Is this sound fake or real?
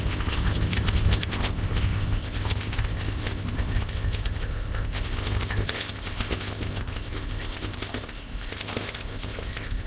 fake